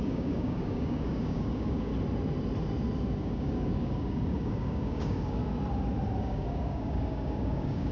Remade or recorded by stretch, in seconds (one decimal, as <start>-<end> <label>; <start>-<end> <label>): 0.0-1.9 remade; 1.9-3.2 recorded; 3.2-5.4 remade; 5.4-6.2 recorded; 6.2-7.9 remade